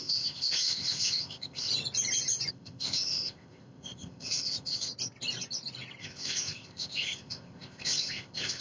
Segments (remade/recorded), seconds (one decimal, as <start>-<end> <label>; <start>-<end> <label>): 0.0-1.7 remade; 1.7-2.5 recorded; 2.5-4.9 remade; 4.9-6.0 recorded; 6.0-8.6 remade

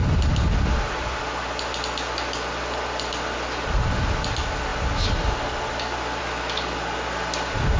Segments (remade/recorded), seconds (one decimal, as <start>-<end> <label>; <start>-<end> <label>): 0.0-7.8 recorded

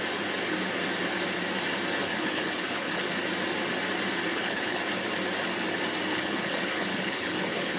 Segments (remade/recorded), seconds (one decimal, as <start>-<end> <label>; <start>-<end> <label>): 0.0-2.0 recorded; 2.0-3.1 remade; 3.1-4.3 recorded; 4.3-4.8 remade; 4.8-6.1 recorded; 6.1-7.8 remade